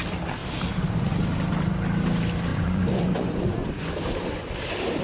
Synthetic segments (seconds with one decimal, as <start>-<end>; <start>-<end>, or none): 2.5-3.9